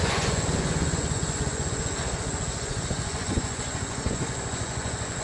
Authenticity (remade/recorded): remade